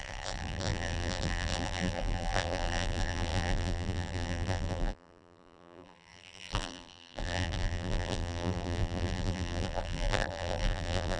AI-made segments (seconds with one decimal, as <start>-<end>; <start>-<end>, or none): 0.0-11.2